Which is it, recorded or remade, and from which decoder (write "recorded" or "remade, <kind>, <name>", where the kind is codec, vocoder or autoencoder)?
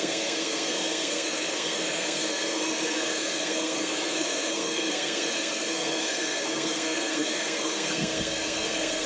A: remade, codec, SNAC